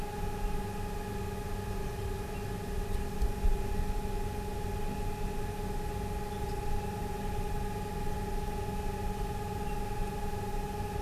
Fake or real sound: real